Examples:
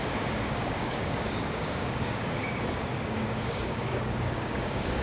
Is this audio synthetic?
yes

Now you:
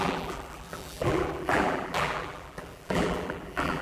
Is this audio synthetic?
yes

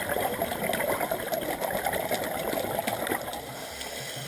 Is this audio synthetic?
no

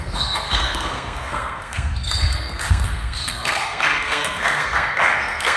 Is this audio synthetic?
yes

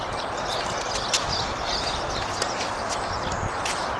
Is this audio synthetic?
no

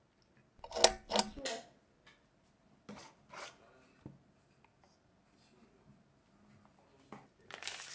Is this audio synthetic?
no